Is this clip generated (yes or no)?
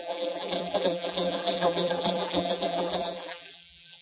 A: yes